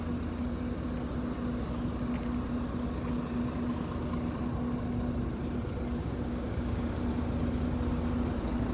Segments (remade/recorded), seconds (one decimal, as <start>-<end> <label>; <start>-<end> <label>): 0.0-6.0 recorded; 6.0-6.9 remade; 6.9-8.7 recorded